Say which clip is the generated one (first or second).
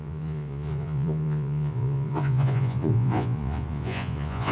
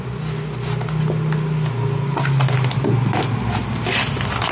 first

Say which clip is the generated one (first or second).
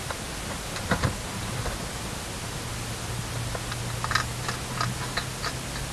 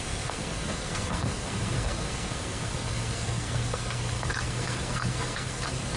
second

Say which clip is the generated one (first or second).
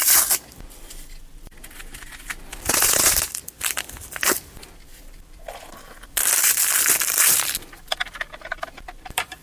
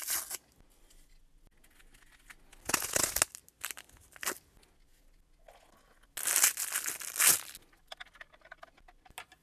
first